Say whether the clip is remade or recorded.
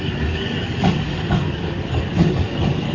remade